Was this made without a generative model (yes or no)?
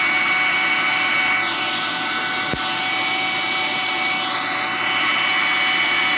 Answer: yes